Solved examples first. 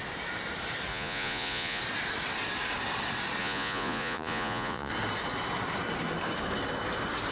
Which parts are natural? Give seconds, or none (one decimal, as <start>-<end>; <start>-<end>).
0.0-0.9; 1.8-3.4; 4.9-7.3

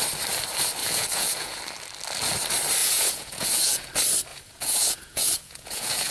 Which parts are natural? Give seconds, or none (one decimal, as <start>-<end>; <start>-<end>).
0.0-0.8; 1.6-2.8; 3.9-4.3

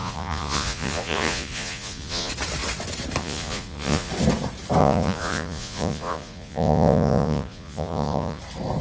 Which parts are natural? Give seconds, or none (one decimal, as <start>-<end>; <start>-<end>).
2.3-3.2; 4.1-4.8; 8.4-8.8

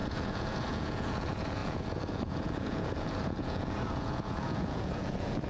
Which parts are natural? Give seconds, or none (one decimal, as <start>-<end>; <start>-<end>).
none

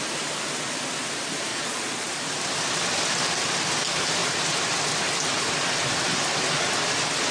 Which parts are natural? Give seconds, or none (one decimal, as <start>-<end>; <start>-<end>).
0.0-1.5; 2.1-7.3

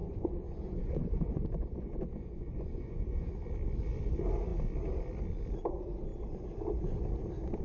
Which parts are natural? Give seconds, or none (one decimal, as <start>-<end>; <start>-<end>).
3.3-7.6